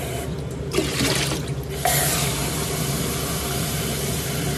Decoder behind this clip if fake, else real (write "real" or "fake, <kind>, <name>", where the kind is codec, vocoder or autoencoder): real